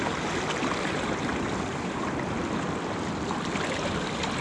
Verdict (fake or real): real